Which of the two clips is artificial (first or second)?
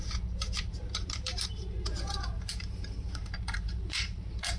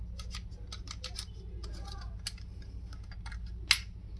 first